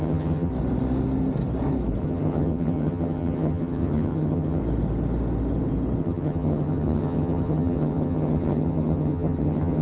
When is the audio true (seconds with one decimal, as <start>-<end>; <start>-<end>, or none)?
0.5-2.0; 4.6-6.0